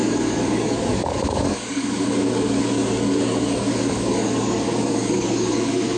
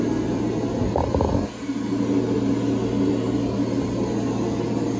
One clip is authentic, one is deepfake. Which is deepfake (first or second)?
first